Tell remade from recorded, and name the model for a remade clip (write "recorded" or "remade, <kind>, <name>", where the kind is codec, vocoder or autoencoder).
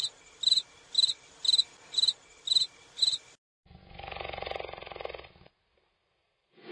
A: recorded